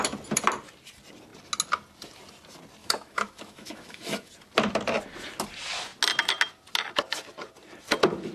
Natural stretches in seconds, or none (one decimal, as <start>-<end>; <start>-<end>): 0.0-2.8; 4.3-8.3